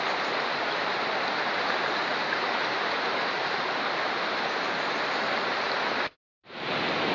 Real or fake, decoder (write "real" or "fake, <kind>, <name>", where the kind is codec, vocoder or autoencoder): fake, vocoder, BigVGAN v2